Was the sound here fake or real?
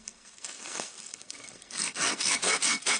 fake